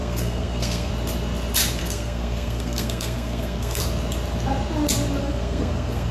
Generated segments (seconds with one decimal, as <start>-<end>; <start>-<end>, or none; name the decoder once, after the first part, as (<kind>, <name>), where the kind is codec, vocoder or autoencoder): 0.0-0.9 (codec, SNAC); 1.8-3.8; 5.2-6.1